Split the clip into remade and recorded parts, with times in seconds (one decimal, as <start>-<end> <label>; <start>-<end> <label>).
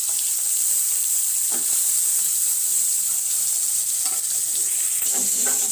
0.0-3.4 remade; 3.4-5.7 recorded